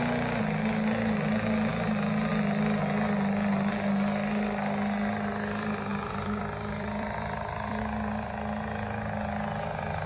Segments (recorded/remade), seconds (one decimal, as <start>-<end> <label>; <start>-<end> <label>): 0.0-1.7 recorded; 1.7-2.3 remade; 2.3-5.9 recorded; 5.9-7.8 remade; 7.8-10.1 recorded